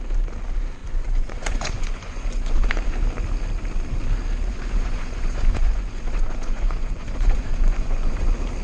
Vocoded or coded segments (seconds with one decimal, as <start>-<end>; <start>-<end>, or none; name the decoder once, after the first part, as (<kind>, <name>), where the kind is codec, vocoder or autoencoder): 0.8-2.7 (vocoder, Vocos); 4.5-8.2